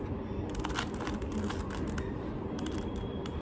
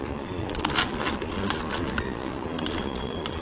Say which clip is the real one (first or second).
first